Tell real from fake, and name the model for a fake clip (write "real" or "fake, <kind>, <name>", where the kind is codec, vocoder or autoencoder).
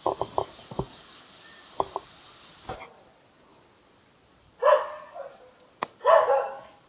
real